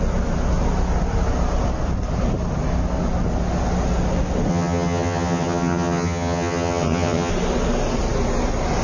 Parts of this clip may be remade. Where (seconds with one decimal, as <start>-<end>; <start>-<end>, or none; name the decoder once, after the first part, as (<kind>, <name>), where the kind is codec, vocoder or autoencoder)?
4.5-7.3 (vocoder, HiFi-GAN)